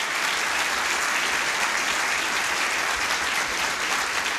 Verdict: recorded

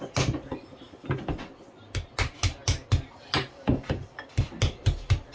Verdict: recorded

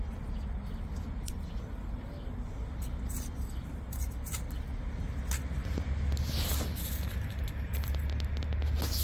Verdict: recorded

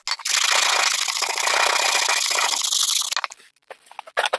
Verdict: recorded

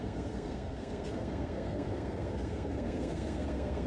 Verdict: remade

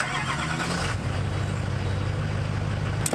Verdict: recorded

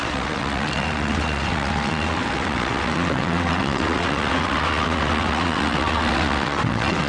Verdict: remade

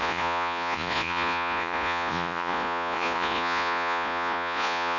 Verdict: remade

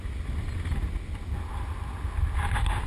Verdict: recorded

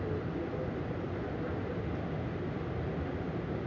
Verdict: recorded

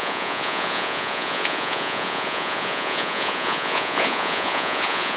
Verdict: remade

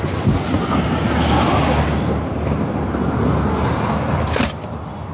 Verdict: recorded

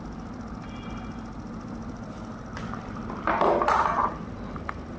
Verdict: recorded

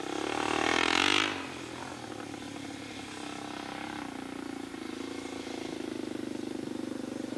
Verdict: recorded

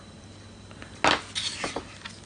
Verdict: recorded